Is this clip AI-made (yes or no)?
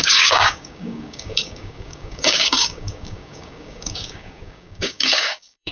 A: yes